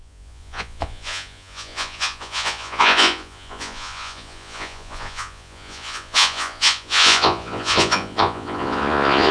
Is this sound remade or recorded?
remade